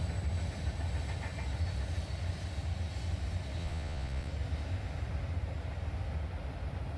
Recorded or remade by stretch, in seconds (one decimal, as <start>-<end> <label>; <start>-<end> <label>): 0.0-3.6 recorded; 3.6-4.3 remade; 4.3-7.0 recorded